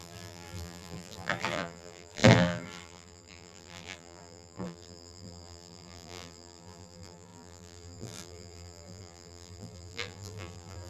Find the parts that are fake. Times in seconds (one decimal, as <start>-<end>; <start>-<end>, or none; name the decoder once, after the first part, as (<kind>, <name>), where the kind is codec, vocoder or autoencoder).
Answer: 0.0-10.9 (vocoder, BigVGAN v2)

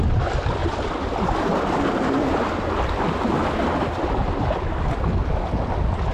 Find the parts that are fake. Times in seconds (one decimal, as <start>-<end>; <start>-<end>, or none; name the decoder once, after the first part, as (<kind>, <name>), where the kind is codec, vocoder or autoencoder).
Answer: 0.6-4.3 (vocoder, BigVGAN v2)

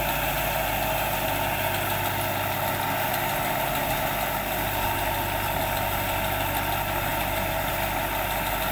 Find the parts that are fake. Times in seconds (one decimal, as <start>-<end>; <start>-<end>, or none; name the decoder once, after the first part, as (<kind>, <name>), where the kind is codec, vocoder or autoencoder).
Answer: none

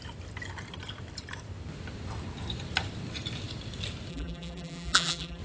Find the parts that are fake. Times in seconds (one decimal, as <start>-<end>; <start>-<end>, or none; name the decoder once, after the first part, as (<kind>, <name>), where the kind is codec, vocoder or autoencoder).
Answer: 4.1-5.4 (vocoder, BigVGAN v2)

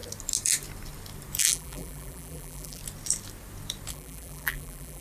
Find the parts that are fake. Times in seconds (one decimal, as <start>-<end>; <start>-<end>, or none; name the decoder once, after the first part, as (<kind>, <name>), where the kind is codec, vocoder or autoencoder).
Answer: 1.4-2.8 (vocoder, BigVGAN v2); 3.9-5.0

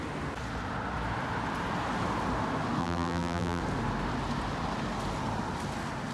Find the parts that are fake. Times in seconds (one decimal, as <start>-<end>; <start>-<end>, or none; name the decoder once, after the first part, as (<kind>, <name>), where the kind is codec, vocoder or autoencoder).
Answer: 2.8-3.6 (vocoder, BigVGAN v2)

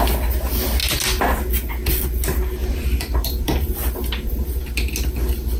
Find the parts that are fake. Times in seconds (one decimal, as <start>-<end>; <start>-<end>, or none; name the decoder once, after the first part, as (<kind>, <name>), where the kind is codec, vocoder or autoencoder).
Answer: 2.6-4.6 (vocoder, BigVGAN v2)